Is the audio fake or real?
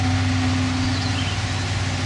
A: real